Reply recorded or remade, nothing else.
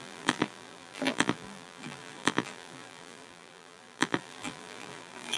remade